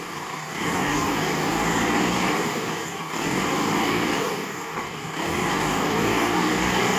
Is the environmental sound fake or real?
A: fake